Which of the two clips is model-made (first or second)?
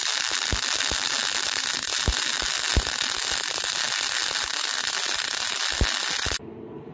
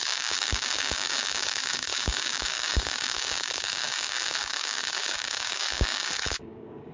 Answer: second